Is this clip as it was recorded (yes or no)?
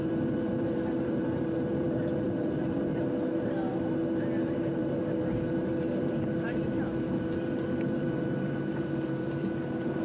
no